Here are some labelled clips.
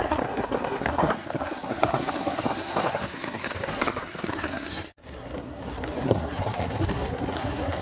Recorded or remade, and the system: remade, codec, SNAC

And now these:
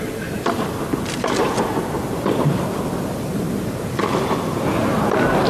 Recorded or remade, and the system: recorded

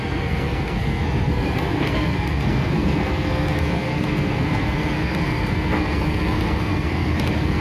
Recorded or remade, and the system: remade, codec, SNAC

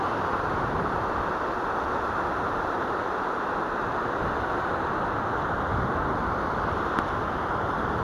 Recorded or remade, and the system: recorded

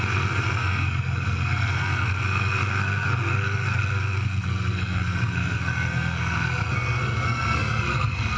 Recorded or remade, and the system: remade, codec, SNAC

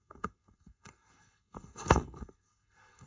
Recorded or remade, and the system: remade, codec, SNAC